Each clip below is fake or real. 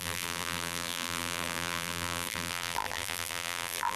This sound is fake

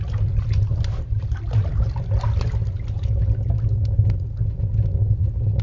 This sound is real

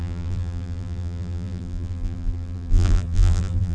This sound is fake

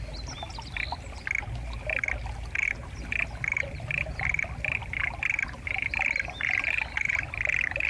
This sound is real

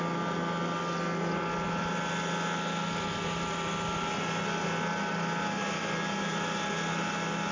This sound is real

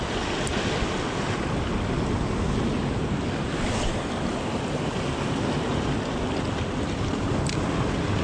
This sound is real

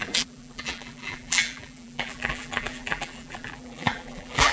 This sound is fake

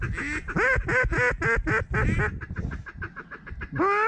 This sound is real